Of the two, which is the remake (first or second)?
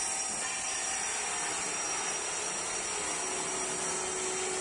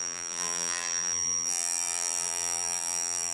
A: second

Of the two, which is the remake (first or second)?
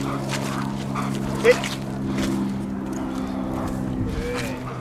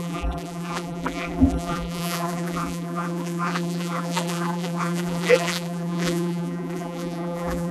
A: second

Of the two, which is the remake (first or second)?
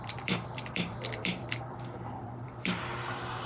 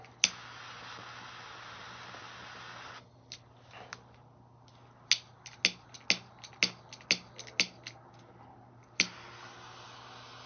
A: first